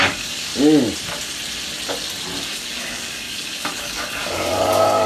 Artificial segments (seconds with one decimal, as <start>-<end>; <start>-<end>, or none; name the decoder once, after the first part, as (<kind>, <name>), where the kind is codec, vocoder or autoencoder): 0.0-0.5 (codec, DAC); 2.4-5.1